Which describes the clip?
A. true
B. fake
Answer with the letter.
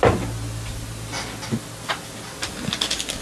A